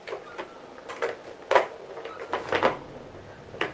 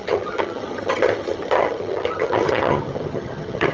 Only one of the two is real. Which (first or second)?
first